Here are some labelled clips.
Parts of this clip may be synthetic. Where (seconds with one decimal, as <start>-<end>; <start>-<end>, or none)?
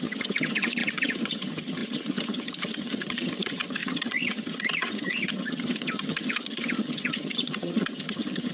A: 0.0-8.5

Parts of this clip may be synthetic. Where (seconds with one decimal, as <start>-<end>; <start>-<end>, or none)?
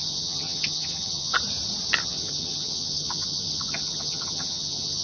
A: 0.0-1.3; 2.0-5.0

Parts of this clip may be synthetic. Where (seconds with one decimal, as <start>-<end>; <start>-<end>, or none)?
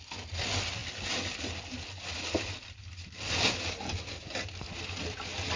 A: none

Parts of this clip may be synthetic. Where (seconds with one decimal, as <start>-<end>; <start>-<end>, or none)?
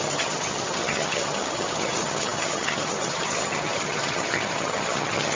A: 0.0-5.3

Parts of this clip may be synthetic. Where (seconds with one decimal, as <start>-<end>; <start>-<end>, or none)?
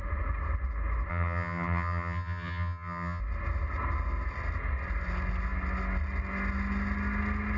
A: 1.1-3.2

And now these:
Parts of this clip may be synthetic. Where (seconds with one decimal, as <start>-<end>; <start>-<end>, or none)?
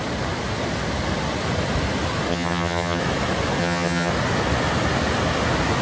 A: 2.3-3.0; 3.6-4.1